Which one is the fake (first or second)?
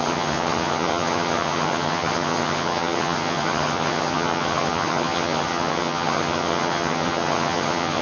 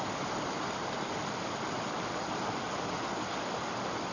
first